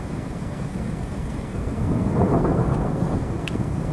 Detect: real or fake fake